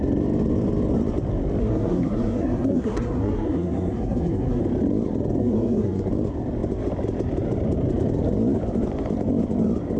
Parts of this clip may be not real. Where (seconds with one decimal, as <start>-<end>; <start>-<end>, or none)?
1.6-4.6; 5.4-6.1